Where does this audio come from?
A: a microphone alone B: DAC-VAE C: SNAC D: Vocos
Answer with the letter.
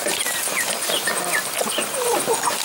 A